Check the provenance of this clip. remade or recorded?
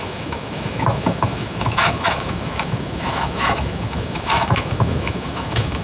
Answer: remade